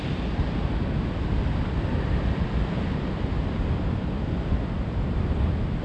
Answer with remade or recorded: recorded